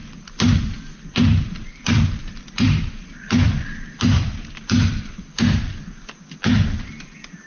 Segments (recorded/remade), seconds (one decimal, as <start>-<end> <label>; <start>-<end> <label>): 0.0-0.6 remade; 0.6-1.1 recorded; 1.1-5.6 remade; 5.6-7.5 recorded